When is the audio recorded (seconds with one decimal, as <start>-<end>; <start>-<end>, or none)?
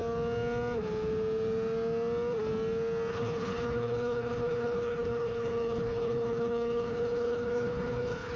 0.0-3.1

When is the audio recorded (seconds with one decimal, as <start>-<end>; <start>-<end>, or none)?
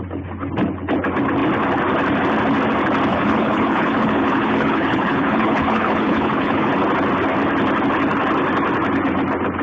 0.0-3.1; 6.7-9.6